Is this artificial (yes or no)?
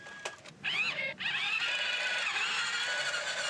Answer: no